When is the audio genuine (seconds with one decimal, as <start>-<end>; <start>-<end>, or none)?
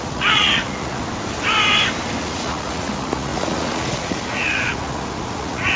1.0-2.2